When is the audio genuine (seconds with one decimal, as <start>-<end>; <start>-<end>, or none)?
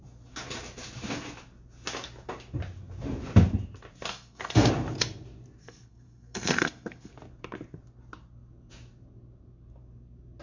0.0-4.1; 4.7-5.6; 7.1-10.4